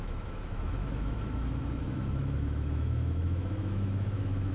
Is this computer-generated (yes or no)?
yes